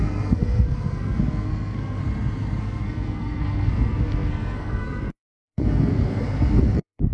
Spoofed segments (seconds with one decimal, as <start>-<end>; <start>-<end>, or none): 0.0-2.0; 2.6-7.1